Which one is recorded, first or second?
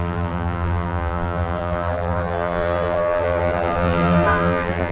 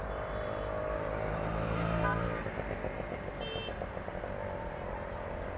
second